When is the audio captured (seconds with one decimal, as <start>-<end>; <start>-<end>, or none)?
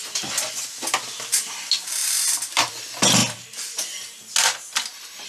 0.5-2.0; 2.8-3.2; 3.8-5.3